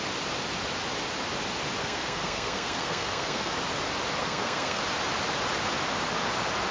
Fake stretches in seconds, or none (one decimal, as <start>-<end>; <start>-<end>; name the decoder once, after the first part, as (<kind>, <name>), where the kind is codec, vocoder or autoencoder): 1.8-3.5 (codec, SNAC); 4.2-4.8